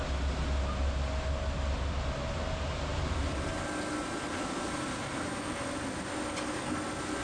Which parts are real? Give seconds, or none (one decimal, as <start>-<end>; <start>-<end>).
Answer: 0.0-7.2